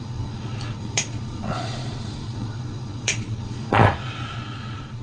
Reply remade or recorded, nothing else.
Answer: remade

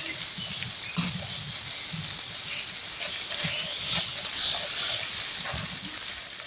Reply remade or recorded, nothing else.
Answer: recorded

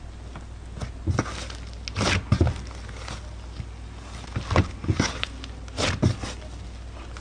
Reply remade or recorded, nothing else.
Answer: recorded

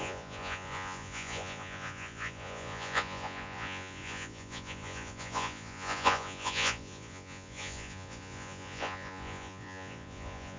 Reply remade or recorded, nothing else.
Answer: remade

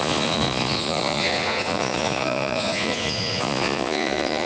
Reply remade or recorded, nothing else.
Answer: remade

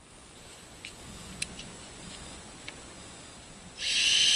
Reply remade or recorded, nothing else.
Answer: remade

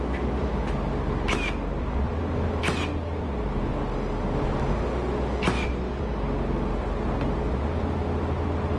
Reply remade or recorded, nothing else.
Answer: recorded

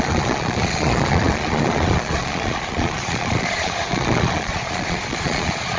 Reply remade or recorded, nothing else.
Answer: remade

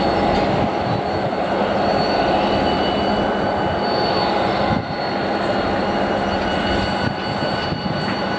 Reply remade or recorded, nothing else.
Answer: recorded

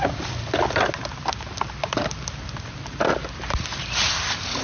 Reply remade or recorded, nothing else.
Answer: recorded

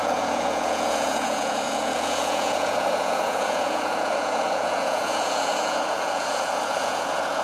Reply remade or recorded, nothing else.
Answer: remade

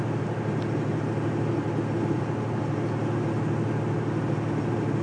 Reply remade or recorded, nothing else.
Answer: recorded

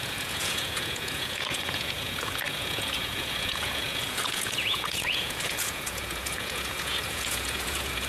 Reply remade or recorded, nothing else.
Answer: remade